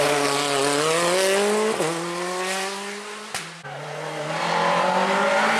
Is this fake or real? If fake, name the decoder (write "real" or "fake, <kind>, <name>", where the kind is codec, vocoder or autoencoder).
real